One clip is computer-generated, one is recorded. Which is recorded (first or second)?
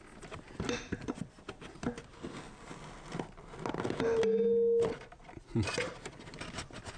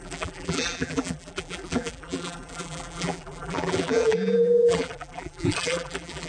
first